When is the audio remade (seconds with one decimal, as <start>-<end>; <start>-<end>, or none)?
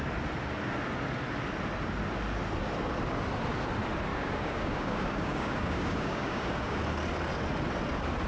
4.1-6.8